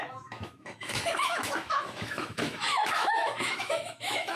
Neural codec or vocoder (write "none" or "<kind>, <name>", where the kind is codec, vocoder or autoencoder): autoencoder, DAC-VAE